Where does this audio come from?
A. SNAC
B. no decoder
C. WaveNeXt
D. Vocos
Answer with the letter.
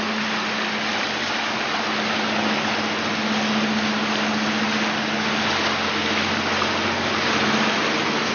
B